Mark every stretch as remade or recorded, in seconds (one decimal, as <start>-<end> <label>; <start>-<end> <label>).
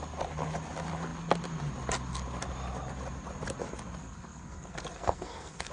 0.0-4.0 recorded; 4.0-5.7 remade